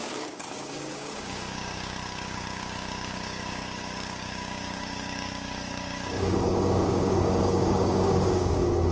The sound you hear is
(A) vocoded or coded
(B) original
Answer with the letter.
A